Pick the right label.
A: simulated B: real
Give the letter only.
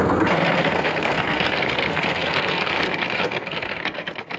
A